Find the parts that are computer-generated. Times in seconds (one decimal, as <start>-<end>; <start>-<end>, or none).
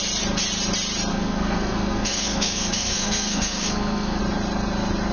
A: 1.1-4.2